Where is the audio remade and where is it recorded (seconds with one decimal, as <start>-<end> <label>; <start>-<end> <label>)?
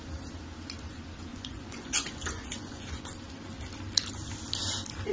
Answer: 0.0-1.3 recorded; 1.3-3.0 remade; 3.0-5.1 recorded